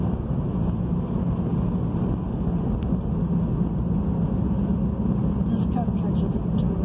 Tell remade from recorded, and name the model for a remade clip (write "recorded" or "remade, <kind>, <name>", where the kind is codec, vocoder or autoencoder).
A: recorded